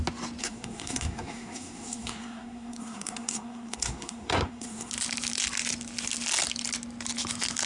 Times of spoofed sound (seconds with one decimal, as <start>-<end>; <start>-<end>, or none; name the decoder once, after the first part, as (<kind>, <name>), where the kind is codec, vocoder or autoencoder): 0.4-4.9 (codec, SNAC)